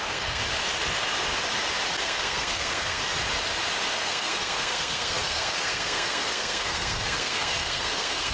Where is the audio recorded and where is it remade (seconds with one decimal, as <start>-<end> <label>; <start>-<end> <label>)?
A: 0.0-0.4 remade; 0.4-2.0 recorded; 2.0-3.0 remade; 3.0-3.9 recorded; 3.9-8.3 remade